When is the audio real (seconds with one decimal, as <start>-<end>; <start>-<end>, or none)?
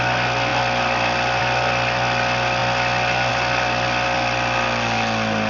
0.0-5.5